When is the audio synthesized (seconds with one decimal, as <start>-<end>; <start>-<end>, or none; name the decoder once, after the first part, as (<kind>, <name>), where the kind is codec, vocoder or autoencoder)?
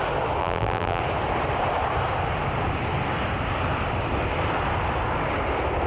0.4-1.0 (vocoder, BigVGAN v2)